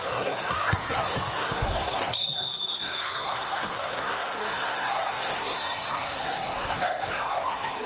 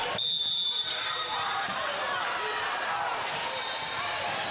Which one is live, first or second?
second